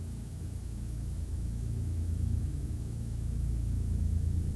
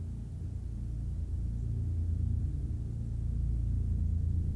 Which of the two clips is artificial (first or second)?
first